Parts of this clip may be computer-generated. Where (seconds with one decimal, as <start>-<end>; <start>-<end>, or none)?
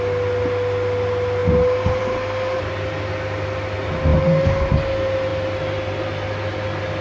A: 5.3-7.0